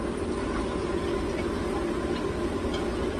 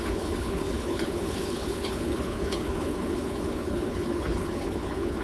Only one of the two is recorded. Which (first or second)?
first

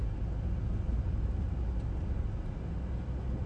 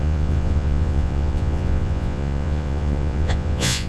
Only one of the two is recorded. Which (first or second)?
first